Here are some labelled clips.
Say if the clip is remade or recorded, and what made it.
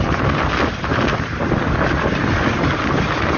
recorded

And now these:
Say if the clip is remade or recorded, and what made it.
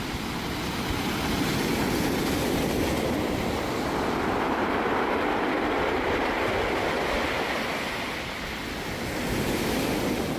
recorded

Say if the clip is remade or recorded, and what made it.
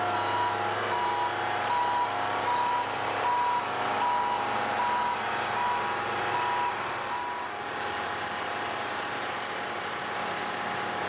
recorded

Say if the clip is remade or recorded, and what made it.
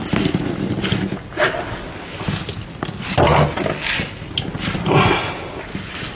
recorded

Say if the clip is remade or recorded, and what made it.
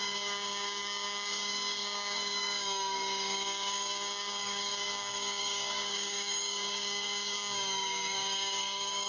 remade, codec, DAC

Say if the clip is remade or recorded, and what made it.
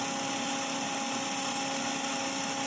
recorded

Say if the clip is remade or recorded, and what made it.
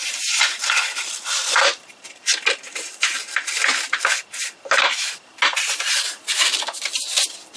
recorded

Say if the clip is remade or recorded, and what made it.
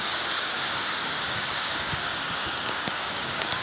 remade, codec, DAC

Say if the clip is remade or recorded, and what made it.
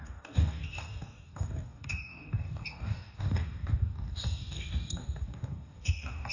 remade, codec, DAC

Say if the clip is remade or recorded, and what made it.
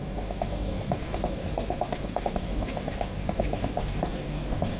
remade, codec, DAC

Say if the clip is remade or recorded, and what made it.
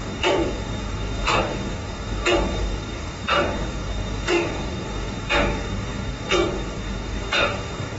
remade, codec, DAC